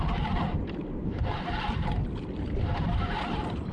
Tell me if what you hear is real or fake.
real